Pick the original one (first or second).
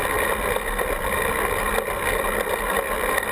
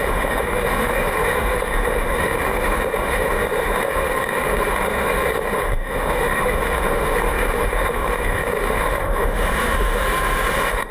first